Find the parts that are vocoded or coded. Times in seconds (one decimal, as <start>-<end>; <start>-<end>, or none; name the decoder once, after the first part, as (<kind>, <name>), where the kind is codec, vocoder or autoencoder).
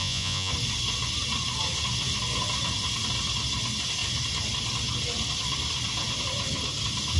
0.0-0.5 (vocoder, Vocos)